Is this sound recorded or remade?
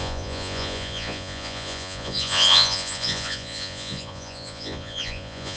remade